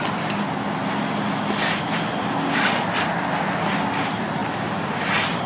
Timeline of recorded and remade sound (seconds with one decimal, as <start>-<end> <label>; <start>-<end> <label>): 0.0-5.5 recorded